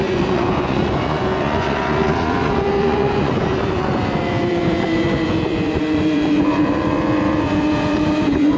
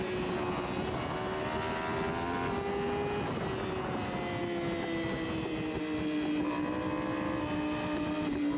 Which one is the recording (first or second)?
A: second